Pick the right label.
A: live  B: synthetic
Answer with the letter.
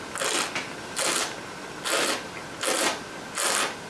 A